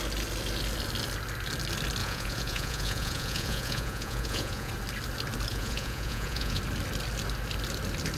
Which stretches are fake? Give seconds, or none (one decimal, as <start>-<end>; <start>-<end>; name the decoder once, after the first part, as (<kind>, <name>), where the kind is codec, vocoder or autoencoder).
2.0-4.7 (vocoder, Vocos); 5.5-6.6

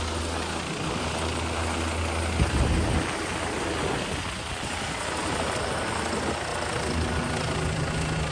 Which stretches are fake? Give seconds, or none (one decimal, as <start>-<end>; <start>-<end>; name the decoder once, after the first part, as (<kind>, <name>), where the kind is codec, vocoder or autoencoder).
none

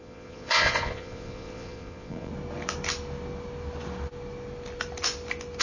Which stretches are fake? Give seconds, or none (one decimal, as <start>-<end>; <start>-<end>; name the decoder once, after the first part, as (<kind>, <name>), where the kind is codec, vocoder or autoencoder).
0.0-2.3 (vocoder, Vocos)

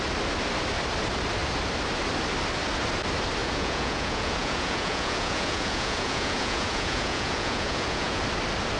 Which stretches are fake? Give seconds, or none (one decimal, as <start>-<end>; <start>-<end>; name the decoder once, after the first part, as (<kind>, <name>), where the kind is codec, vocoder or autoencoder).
3.4-8.2 (vocoder, Vocos)